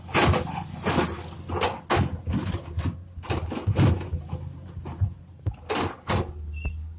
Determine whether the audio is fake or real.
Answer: real